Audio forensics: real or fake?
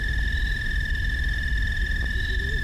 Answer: real